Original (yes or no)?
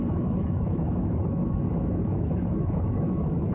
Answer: no